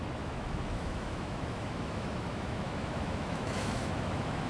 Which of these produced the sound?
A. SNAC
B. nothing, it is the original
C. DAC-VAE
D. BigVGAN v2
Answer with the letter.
C